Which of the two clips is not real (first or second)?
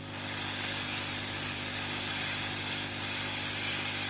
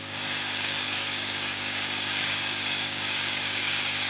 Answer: second